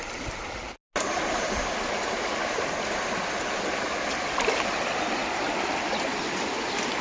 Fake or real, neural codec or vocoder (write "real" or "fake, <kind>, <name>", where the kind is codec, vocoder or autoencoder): real